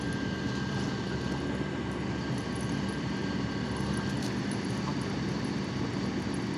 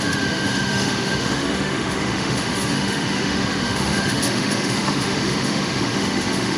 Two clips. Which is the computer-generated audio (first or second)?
second